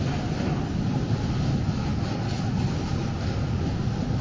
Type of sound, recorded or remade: recorded